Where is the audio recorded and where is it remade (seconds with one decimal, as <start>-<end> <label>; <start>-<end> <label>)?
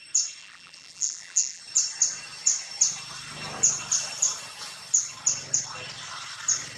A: 0.0-0.4 recorded; 0.4-1.6 remade; 1.6-6.8 recorded